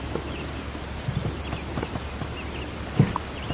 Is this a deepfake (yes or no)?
yes